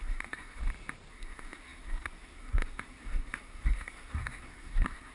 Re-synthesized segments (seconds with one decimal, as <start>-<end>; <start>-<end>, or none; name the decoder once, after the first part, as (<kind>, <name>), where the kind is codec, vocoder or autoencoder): 0.0-0.6 (codec, SNAC); 1.1-5.1